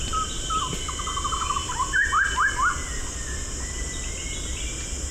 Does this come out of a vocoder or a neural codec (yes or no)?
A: no